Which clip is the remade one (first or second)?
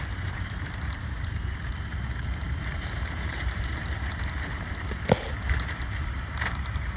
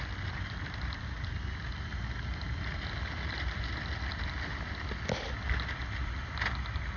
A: first